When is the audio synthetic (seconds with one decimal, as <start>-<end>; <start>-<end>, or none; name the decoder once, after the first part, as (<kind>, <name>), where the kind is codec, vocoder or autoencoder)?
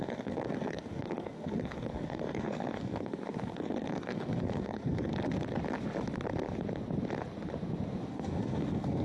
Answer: 0.0-5.1 (codec, SNAC); 8.1-9.0